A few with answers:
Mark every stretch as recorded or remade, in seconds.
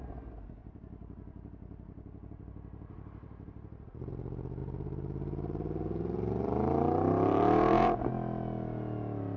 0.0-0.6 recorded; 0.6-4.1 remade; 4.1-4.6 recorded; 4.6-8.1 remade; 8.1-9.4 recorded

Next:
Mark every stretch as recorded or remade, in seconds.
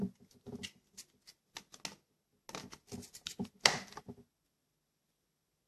0.0-5.7 recorded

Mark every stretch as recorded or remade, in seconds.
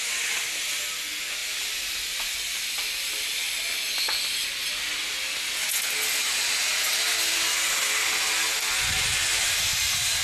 0.0-1.4 recorded; 1.4-3.7 remade; 3.7-10.2 recorded